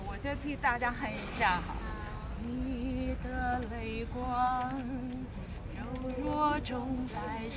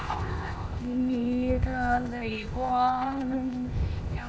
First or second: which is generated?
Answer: second